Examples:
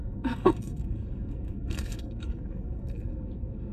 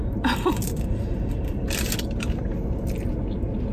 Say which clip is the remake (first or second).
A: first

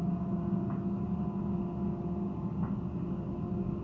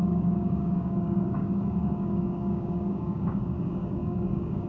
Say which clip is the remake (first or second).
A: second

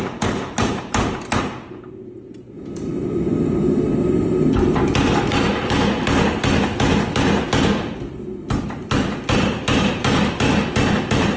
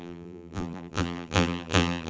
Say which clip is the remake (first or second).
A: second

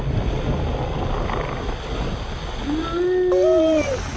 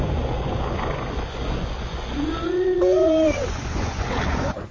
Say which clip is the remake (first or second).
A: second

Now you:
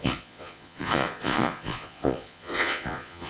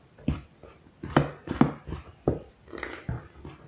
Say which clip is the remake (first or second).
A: first